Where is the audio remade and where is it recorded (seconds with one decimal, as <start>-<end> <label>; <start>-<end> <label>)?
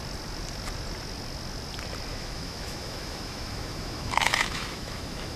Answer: 0.0-2.1 recorded; 2.1-5.4 remade